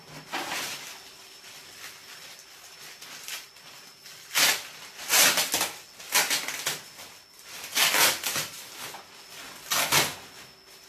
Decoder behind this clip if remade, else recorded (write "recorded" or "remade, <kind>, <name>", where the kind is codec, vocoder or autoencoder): recorded